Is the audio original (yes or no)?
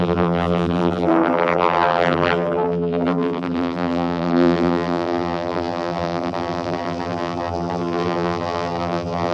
no